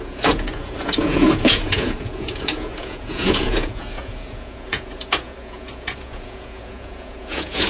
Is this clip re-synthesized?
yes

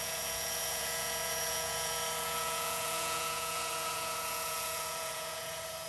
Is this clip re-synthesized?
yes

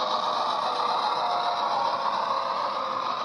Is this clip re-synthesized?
no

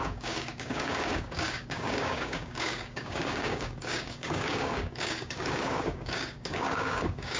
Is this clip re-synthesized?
yes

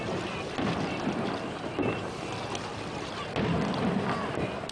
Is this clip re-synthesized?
no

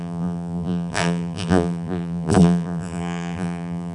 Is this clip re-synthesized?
yes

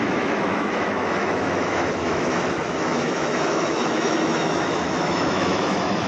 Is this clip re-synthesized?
yes